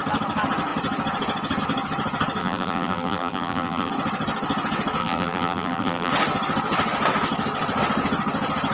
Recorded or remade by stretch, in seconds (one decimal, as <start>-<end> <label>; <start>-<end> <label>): 0.0-2.4 recorded; 2.4-3.9 remade; 3.9-5.0 recorded; 5.0-6.1 remade; 6.1-8.7 recorded